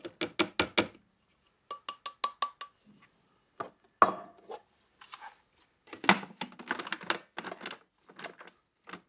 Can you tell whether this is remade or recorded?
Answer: recorded